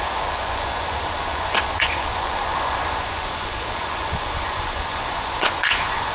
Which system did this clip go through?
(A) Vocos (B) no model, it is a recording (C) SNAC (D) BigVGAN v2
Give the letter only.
A